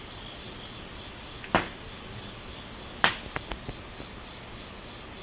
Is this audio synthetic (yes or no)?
no